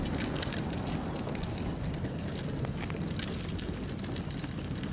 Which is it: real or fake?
real